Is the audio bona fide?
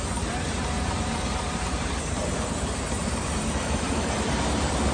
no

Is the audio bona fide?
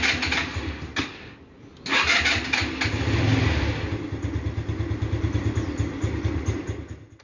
yes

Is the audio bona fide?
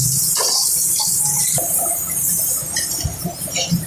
no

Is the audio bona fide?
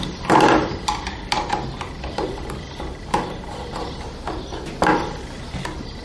yes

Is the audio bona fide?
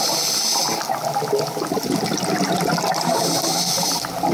yes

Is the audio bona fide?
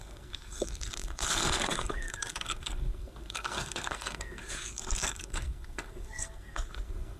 no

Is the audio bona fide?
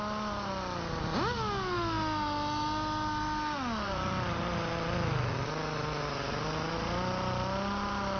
yes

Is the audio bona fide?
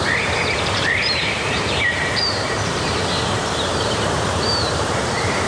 no